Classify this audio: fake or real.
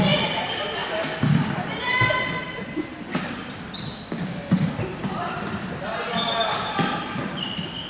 fake